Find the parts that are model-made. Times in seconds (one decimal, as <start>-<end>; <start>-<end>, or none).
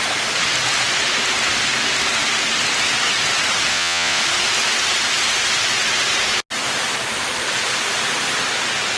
3.7-4.2